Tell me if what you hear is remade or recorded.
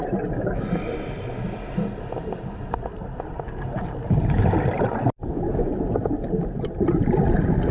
recorded